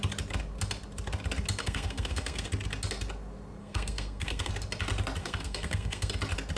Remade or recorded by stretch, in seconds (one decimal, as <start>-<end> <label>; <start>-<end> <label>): 0.0-1.6 recorded; 1.6-2.5 remade; 2.5-3.6 recorded; 3.6-4.5 remade; 4.5-5.2 recorded; 5.2-6.1 remade; 6.1-6.6 recorded